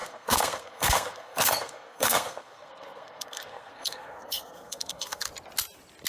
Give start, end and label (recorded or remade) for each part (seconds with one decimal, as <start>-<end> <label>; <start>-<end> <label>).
0.0-5.3 remade; 5.3-6.1 recorded